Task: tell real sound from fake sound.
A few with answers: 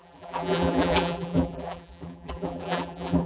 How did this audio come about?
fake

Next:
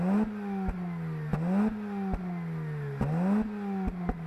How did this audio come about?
real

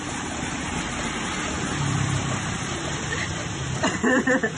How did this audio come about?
fake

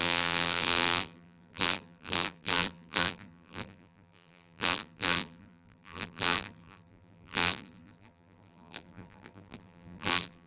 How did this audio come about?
fake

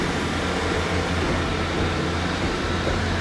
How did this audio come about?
real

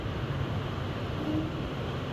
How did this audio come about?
real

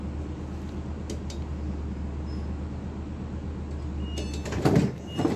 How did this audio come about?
real